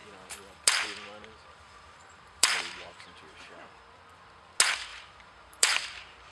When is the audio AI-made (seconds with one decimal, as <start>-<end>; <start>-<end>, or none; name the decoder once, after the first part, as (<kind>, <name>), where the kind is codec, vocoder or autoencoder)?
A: 0.0-3.8 (vocoder, BigVGAN v2); 4.9-6.3